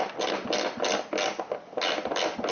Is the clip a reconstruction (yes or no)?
no